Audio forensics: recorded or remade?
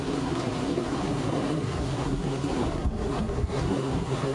remade